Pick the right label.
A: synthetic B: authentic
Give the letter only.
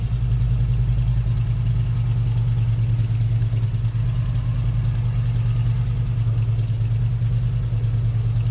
B